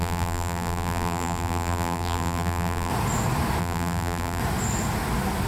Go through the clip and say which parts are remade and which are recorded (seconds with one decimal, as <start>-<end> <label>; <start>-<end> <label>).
0.0-2.9 remade; 2.9-3.6 recorded; 3.6-4.4 remade; 4.4-5.5 recorded